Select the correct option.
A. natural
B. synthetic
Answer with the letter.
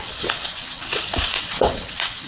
B